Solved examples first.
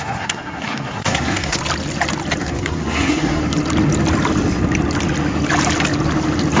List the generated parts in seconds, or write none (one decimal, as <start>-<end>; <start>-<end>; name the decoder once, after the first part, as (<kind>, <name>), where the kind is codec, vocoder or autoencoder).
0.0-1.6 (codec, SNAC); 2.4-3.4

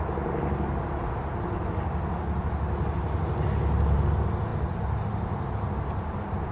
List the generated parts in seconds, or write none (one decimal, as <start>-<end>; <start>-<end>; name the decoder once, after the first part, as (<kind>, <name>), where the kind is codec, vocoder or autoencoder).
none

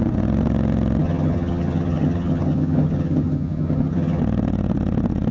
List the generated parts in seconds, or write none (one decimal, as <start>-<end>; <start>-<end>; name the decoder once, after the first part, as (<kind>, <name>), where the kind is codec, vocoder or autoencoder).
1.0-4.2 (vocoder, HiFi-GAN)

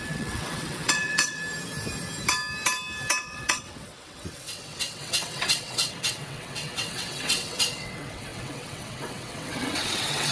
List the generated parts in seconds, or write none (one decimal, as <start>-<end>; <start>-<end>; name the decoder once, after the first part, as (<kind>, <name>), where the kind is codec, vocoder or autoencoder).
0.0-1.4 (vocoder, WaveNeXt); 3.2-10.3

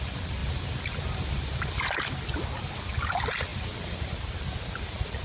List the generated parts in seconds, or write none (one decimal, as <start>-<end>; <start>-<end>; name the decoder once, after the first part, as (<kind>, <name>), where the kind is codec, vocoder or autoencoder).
none